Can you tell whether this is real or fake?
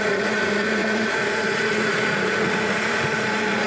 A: fake